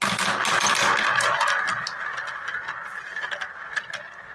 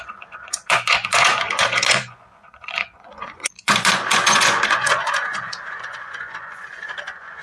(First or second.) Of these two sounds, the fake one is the second